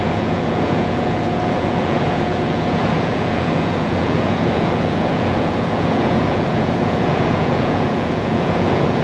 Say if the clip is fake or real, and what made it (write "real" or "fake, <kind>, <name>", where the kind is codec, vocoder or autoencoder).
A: fake, vocoder, Vocos